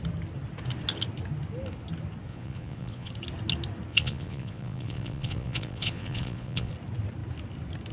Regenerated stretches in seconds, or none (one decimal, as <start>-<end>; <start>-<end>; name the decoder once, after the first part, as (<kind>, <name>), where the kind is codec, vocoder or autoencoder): 2.3-3.1 (vocoder, Vocos); 3.9-6.7